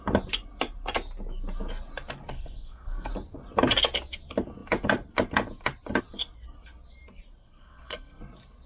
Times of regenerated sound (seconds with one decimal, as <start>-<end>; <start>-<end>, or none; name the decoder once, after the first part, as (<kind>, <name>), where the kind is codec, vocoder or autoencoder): 2.3-3.1 (codec, SNAC); 7.4-8.2